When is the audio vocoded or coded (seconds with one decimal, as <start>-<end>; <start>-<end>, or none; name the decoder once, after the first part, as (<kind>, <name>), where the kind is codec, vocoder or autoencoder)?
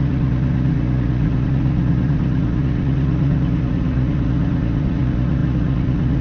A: 0.0-6.2 (vocoder, Vocos)